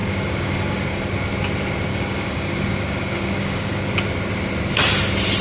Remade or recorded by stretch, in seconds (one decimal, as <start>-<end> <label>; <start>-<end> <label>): 0.0-1.3 remade; 1.3-1.9 recorded; 1.9-3.9 remade; 3.9-5.4 recorded